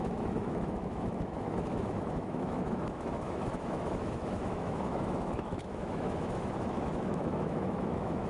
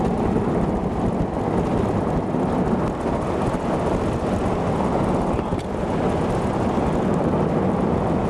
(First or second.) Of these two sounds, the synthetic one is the first